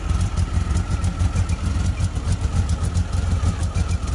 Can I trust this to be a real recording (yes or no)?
yes